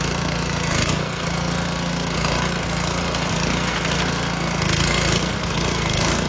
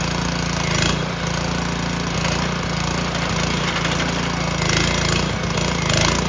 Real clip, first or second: second